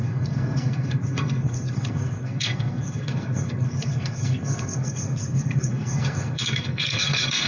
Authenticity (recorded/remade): remade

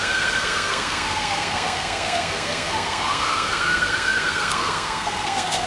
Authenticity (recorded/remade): remade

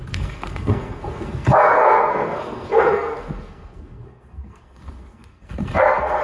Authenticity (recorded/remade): remade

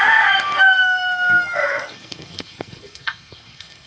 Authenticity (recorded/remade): remade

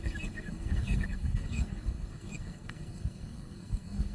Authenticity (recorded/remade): remade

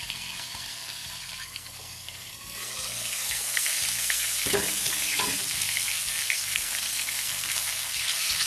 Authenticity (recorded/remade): remade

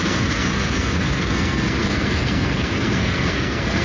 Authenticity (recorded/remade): remade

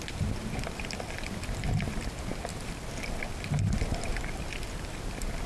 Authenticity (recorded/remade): recorded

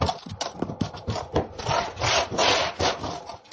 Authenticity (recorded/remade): recorded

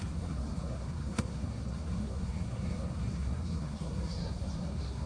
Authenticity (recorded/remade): remade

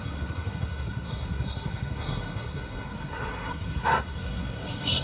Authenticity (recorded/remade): remade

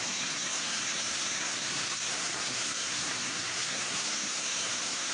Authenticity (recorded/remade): remade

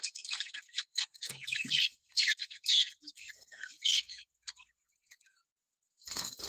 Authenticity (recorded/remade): remade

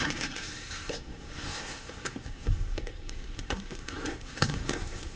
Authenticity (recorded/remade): remade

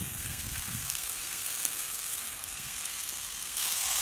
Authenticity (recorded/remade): remade